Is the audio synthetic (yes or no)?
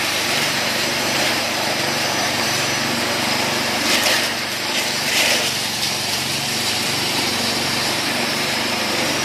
yes